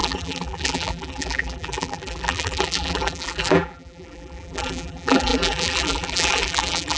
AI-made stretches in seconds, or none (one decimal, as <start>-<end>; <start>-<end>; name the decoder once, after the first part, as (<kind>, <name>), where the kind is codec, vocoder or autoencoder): 0.0-7.0 (vocoder, BigVGAN v2)